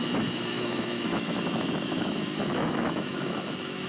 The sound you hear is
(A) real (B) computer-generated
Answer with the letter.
B